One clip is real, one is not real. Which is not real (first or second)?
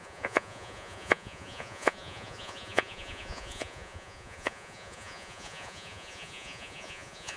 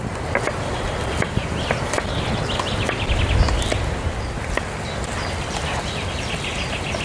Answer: first